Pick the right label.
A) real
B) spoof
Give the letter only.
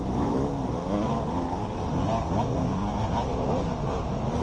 A